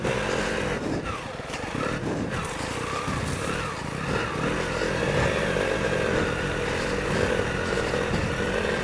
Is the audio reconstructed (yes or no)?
no